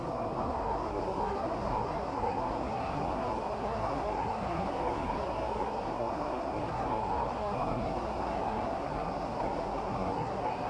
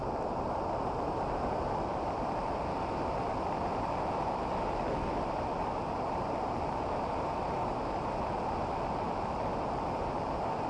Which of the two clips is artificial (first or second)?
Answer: first